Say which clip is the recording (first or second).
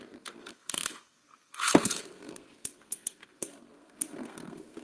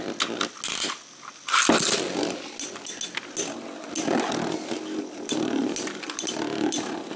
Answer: second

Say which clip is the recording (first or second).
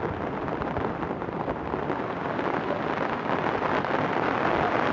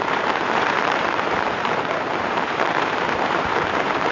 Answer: first